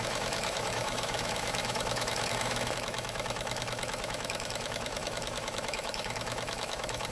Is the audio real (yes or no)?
no